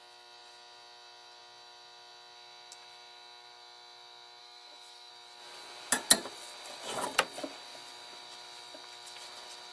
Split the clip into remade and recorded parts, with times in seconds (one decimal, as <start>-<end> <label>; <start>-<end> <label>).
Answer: 0.0-4.4 recorded; 4.4-5.1 remade; 5.1-9.7 recorded